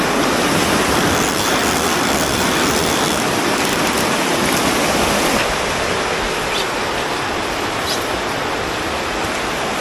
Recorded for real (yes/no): yes